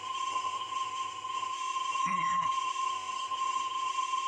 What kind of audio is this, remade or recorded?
remade